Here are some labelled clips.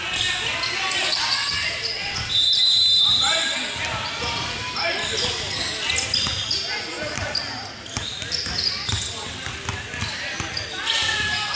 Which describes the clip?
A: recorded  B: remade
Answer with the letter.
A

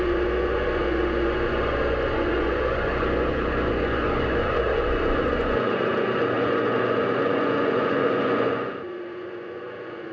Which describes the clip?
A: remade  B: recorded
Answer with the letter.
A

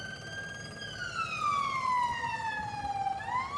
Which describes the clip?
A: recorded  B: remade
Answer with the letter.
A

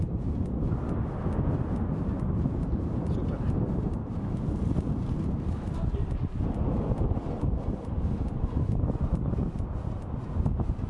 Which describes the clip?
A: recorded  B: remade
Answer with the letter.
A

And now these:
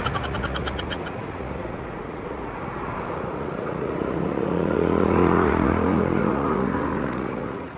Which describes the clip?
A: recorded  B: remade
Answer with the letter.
B